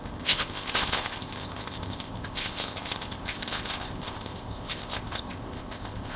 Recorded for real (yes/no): no